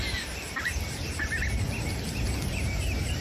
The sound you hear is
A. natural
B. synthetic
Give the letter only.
A